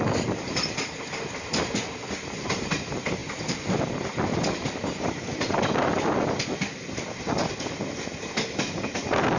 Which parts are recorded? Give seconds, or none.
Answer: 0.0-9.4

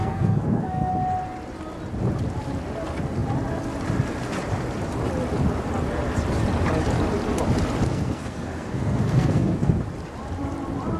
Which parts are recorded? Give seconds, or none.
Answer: 0.9-7.9; 9.8-11.0